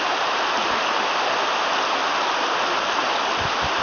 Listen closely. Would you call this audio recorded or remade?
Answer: recorded